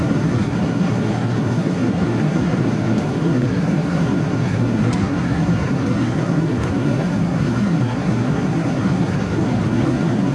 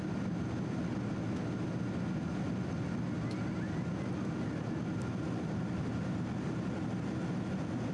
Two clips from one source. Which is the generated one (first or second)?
first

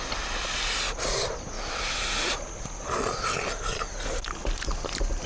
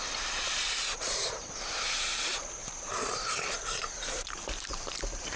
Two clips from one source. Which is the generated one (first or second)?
second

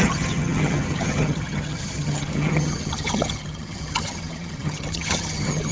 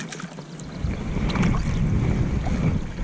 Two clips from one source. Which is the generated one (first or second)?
first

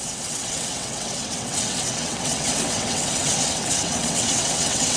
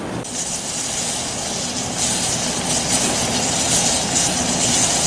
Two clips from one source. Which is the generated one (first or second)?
first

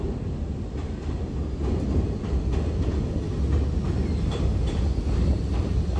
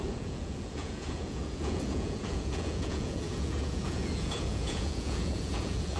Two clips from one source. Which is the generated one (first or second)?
second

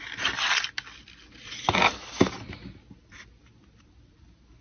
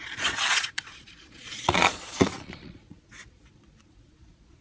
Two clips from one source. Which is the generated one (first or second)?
second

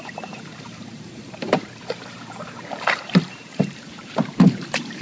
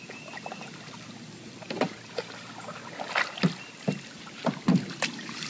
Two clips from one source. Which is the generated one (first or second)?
first